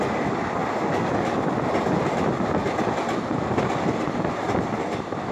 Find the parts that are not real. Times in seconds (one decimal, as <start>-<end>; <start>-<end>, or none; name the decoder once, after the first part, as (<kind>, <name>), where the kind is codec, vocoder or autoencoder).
none